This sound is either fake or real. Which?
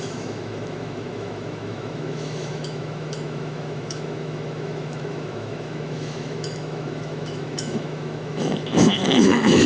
fake